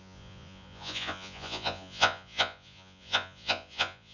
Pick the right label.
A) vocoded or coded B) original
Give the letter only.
A